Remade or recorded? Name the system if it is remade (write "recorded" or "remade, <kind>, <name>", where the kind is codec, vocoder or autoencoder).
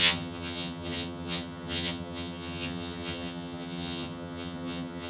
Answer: remade, vocoder, HiFi-GAN